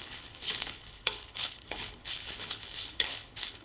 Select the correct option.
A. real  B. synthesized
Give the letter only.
B